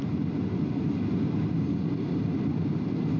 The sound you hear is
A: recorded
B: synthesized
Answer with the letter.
A